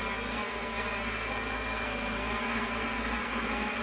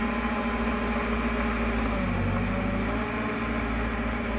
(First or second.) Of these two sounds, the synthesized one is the first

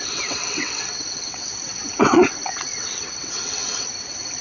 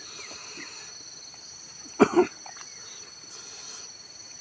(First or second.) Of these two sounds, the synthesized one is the first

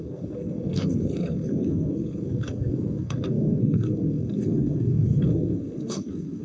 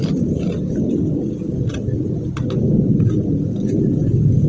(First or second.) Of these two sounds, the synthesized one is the first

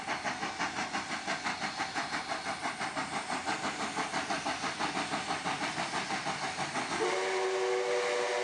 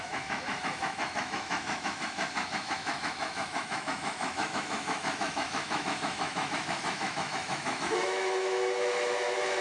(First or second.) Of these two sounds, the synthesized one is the second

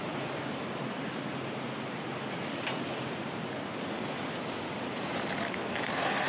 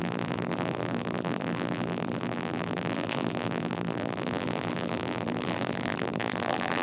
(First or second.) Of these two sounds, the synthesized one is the second